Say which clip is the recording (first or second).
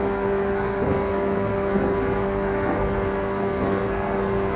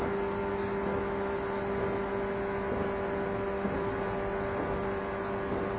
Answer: second